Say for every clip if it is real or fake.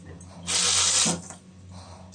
real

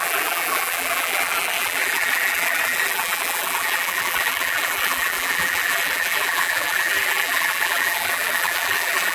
fake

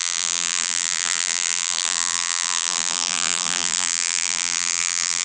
fake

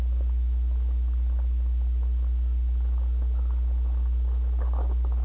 real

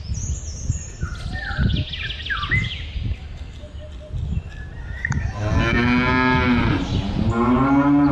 real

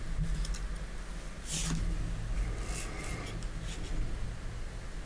real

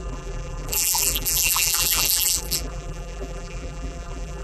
fake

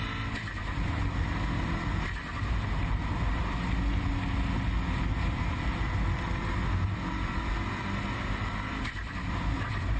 real